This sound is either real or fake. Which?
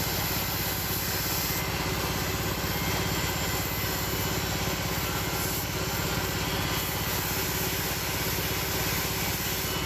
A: real